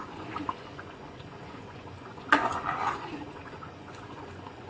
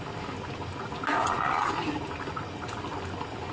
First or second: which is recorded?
second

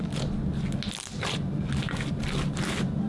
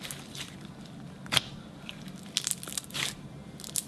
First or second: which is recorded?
first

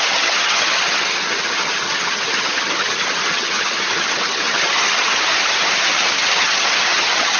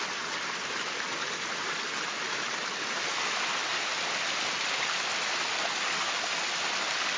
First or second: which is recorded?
second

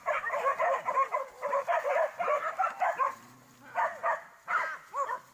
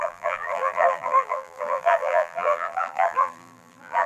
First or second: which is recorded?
first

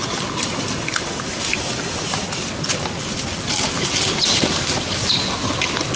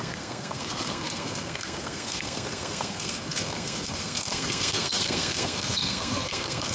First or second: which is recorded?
first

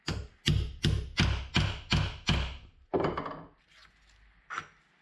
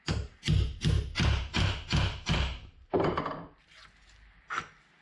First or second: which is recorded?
first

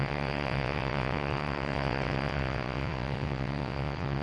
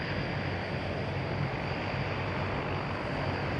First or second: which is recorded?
second